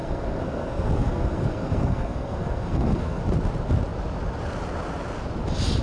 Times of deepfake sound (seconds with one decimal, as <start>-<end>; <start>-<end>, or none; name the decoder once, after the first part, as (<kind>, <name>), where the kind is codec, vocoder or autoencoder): 0.0-3.2 (codec, SNAC)